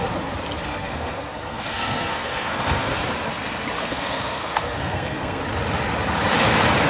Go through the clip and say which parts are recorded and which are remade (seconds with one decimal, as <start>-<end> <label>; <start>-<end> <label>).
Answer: 0.0-0.7 recorded; 0.7-3.0 remade; 3.0-3.8 recorded; 3.8-5.4 remade; 5.4-6.9 recorded